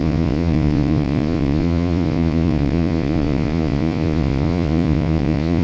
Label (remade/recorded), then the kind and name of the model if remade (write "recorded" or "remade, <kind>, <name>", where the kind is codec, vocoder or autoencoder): remade, vocoder, Vocos